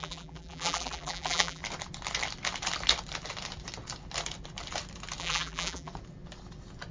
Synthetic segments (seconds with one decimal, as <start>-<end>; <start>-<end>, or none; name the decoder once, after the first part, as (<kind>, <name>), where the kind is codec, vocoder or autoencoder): 0.0-1.6 (vocoder, BigVGAN v2); 5.2-5.9